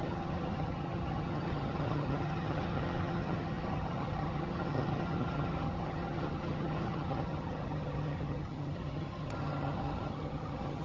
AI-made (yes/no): yes